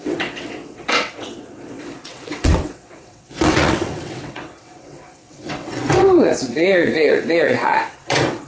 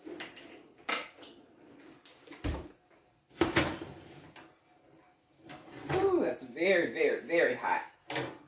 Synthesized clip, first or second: first